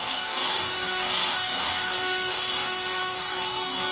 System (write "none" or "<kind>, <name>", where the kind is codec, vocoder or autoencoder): codec, DAC